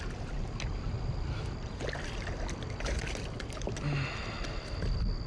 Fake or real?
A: real